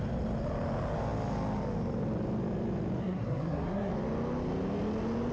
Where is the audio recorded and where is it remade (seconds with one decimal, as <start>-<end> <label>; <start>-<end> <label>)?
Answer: 0.0-3.0 recorded; 3.0-3.9 remade; 3.9-5.3 recorded